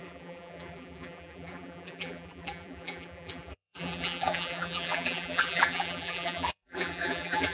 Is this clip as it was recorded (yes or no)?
no